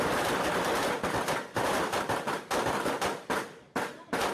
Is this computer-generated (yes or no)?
yes